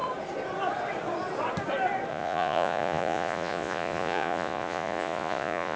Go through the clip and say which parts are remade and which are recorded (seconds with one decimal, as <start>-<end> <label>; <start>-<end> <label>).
0.0-2.1 recorded; 2.1-5.8 remade